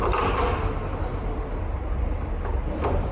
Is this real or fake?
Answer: real